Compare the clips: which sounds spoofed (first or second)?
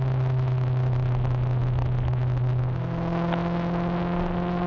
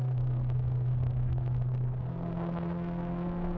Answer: second